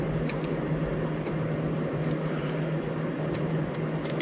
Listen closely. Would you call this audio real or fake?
real